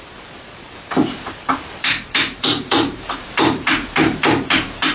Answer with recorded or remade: remade